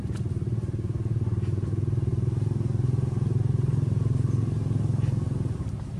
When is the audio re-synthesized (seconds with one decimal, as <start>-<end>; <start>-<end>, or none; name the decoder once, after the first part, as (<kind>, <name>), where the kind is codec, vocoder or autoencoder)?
none

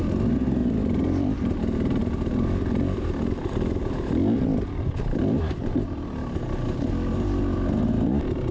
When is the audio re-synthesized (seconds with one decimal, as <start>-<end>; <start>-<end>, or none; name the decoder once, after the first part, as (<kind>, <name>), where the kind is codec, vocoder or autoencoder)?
0.6-1.5 (vocoder, BigVGAN v2); 2.0-6.4

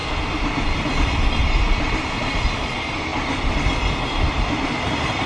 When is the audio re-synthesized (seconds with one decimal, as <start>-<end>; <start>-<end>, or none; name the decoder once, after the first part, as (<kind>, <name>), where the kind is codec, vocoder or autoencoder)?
2.5-3.1 (vocoder, BigVGAN v2); 4.3-5.3

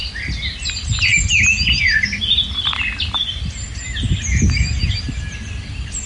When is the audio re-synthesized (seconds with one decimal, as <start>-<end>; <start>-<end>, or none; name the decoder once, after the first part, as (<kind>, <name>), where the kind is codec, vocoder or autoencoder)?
4.3-4.9 (vocoder, BigVGAN v2)

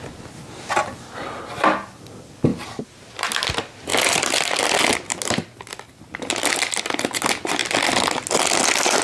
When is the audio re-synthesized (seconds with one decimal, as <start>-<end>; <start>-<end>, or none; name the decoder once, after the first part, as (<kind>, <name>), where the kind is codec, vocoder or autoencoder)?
2.5-3.3 (vocoder, BigVGAN v2)

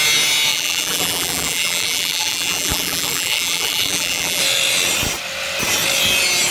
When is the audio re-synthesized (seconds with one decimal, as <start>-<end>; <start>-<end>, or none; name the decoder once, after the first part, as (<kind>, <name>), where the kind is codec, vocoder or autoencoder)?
0.5-4.4 (vocoder, BigVGAN v2)

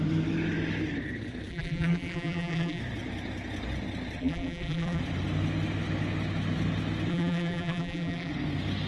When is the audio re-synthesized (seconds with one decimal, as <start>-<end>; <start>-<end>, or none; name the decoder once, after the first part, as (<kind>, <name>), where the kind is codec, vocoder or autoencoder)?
1.5-2.8 (vocoder, BigVGAN v2); 4.2-5.0; 7.1-8.3

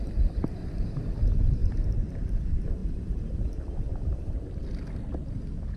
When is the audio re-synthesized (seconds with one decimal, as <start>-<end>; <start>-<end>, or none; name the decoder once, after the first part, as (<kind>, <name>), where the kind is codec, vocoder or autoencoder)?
0.0-2.8 (vocoder, BigVGAN v2); 3.9-4.6